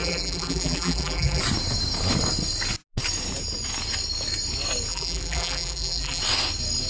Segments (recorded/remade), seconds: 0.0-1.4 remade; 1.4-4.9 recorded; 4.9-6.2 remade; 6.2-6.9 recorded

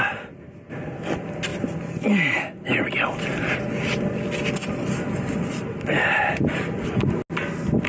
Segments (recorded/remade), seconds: 0.0-7.9 recorded

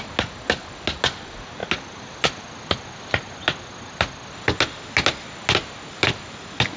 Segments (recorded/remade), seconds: 0.0-6.8 recorded

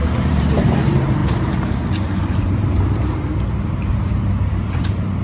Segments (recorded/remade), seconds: 0.0-5.2 remade